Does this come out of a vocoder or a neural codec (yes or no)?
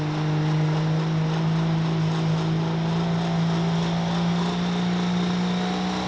no